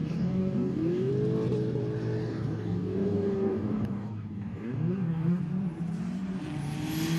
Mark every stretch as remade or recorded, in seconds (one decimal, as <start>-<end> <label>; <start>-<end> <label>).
0.0-1.1 remade; 1.1-2.2 recorded; 2.2-5.4 remade; 5.4-7.2 recorded